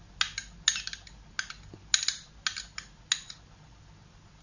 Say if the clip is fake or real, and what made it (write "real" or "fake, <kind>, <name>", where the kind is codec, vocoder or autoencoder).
real